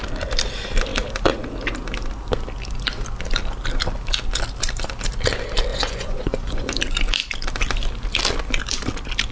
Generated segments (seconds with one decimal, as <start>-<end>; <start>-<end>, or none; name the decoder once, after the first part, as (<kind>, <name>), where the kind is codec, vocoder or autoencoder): 5.7-6.7 (vocoder, Vocos)